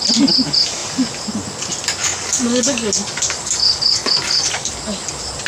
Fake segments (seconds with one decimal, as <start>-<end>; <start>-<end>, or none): 2.0-4.7